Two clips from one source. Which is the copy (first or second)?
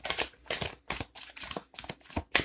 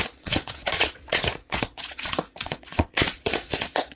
second